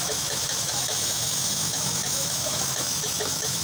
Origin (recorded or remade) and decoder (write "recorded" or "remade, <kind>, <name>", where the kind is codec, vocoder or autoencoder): remade, autoencoder, DAC-VAE